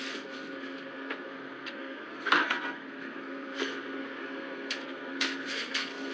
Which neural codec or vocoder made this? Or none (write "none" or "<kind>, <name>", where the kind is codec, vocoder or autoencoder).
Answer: codec, SNAC